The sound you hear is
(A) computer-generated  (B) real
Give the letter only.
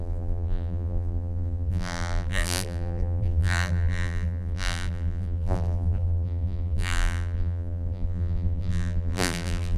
A